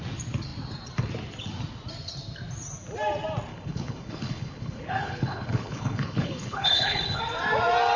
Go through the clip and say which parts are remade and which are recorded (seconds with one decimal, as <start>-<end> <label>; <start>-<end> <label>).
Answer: 0.0-3.5 recorded; 3.5-7.2 remade; 7.2-8.0 recorded